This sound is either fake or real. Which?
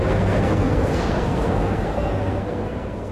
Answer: fake